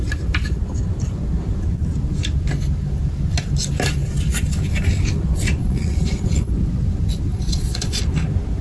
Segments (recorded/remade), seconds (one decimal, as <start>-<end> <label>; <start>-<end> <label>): 0.0-5.6 recorded; 5.6-6.5 remade; 6.5-7.3 recorded; 7.3-8.0 remade; 8.0-8.6 recorded